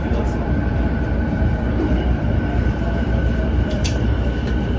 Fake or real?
fake